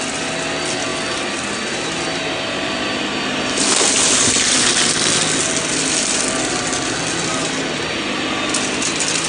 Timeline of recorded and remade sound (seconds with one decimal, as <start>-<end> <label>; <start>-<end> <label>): 0.0-9.3 recorded